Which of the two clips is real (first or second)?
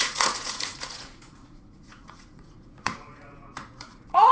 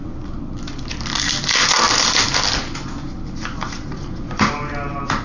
second